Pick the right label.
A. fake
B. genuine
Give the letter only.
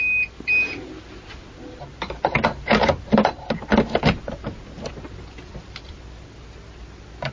B